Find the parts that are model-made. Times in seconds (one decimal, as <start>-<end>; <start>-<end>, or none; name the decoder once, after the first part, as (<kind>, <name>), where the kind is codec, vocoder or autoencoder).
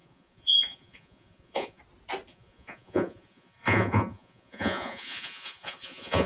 0.0-1.8 (vocoder, Vocos); 2.3-6.3